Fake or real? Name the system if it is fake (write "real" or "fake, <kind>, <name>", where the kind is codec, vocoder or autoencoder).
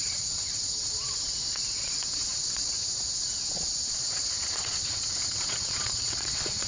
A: fake, vocoder, WaveNeXt